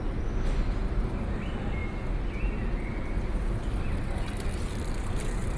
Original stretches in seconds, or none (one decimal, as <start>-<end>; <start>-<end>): 0.0-5.6